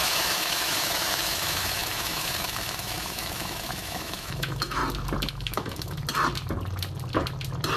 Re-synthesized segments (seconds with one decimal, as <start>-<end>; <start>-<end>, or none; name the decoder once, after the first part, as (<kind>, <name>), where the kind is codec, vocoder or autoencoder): 0.0-4.8 (autoencoder, DAC-VAE); 5.3-6.0